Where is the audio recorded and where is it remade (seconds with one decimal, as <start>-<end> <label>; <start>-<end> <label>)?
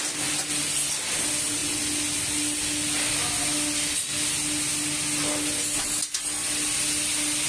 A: 0.0-7.5 recorded